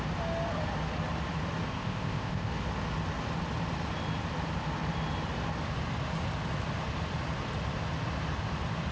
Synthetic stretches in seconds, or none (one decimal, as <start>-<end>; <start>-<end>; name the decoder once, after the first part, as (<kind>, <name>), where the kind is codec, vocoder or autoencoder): 1.7-2.5 (codec, ZipCodec)